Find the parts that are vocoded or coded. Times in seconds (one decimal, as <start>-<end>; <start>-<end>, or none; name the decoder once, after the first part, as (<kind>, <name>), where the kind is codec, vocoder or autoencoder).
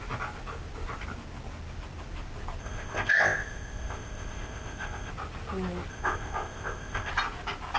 2.6-5.1 (codec, ZipCodec); 5.9-7.1